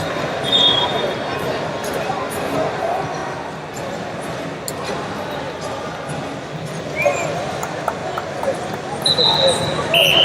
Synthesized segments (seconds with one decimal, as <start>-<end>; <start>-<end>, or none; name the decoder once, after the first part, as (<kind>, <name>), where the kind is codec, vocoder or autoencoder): none